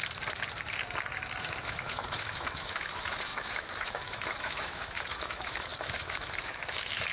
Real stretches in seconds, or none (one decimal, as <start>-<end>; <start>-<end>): 0.0-1.6